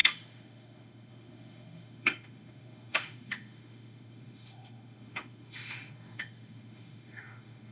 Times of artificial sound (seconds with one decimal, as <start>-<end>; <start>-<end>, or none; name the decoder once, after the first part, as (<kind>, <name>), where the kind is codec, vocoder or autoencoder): 0.0-7.7 (autoencoder, DAC-VAE)